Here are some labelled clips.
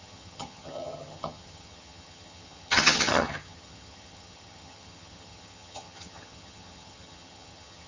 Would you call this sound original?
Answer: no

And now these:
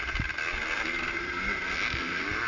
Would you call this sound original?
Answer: yes